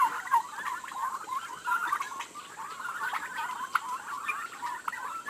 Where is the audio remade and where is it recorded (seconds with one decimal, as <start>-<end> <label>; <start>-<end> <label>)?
0.0-1.8 remade; 1.8-2.4 recorded; 2.4-5.3 remade